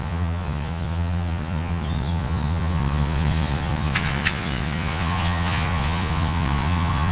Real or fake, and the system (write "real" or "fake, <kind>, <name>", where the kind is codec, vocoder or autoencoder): fake, vocoder, Vocos